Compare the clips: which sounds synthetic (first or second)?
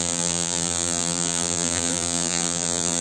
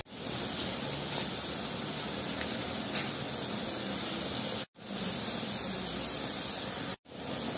first